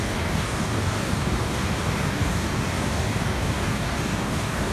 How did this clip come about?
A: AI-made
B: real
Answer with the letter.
A